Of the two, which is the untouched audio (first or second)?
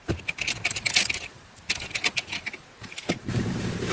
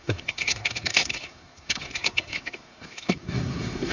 first